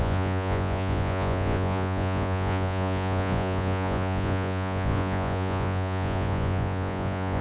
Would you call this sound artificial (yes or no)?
yes